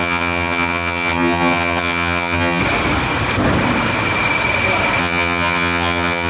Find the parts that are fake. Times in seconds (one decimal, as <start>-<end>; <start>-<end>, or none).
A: 0.0-2.6; 5.0-6.3